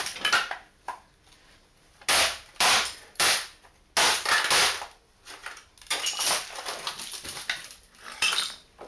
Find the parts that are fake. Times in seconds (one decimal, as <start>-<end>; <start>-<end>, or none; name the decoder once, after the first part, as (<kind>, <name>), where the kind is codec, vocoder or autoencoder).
none